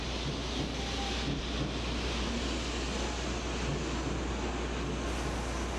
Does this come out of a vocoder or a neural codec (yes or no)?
no